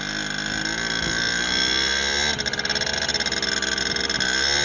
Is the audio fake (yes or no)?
no